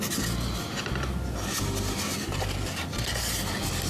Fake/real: real